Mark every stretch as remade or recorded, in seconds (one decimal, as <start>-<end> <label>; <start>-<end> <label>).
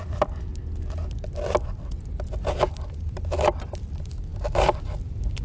0.0-0.5 remade; 0.5-2.5 recorded; 2.5-4.3 remade; 4.3-5.0 recorded; 5.0-5.4 remade